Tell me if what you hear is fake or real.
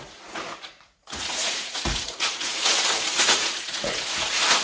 fake